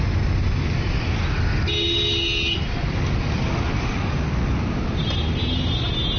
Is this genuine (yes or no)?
yes